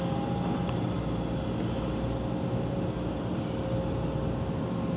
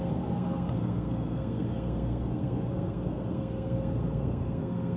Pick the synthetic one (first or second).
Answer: second